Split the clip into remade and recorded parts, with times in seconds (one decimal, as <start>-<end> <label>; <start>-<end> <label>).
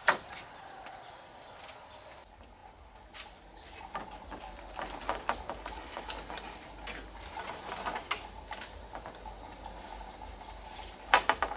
0.0-11.6 recorded